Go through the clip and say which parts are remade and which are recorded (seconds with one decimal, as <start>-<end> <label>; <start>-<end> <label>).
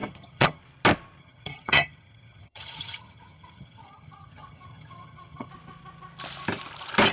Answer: 0.0-0.6 remade; 0.6-1.2 recorded; 1.2-5.5 remade; 5.5-7.1 recorded